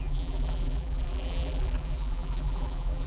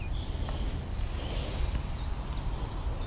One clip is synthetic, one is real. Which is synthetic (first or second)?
first